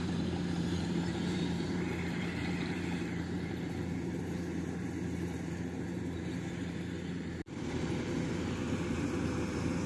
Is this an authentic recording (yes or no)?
no